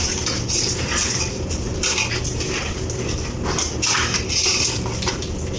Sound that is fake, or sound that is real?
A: real